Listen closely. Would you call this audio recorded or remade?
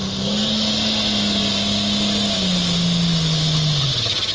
recorded